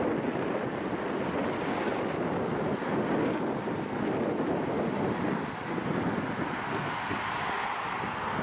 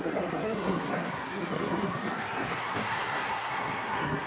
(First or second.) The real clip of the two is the first